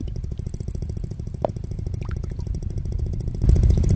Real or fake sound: fake